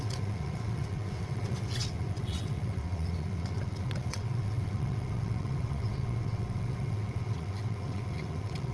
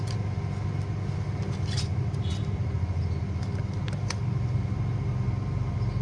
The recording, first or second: second